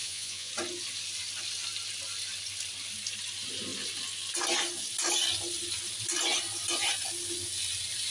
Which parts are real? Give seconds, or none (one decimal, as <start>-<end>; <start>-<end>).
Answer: 0.5-8.1